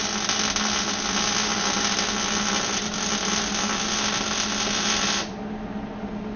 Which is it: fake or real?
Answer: real